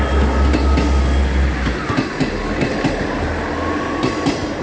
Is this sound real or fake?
real